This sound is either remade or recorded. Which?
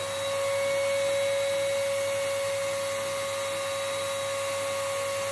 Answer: recorded